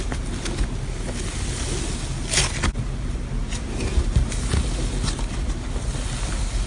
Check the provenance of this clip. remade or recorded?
recorded